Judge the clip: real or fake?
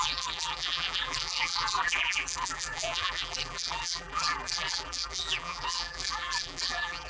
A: fake